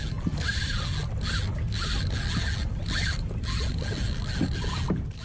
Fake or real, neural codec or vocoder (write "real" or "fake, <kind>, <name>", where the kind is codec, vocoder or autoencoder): real